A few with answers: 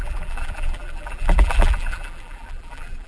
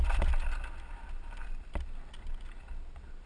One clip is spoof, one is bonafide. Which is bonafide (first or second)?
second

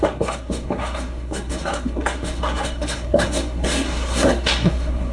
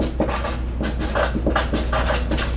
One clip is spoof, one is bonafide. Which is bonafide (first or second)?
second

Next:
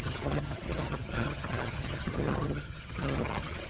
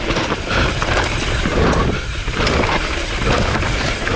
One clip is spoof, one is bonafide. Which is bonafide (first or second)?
second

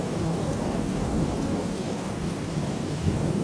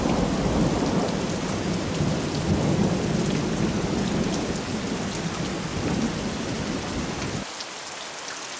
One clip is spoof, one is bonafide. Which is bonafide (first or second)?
second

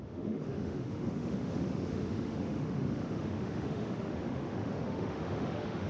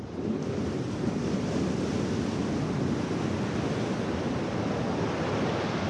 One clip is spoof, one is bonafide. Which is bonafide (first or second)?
second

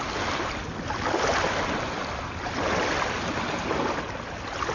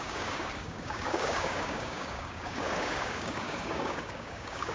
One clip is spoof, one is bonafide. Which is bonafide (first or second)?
first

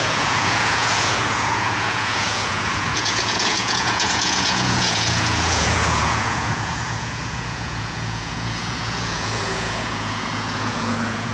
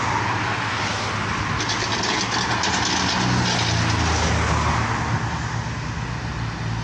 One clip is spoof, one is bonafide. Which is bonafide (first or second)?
second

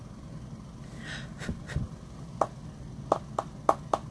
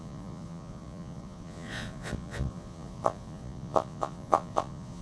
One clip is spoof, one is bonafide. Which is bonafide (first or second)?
first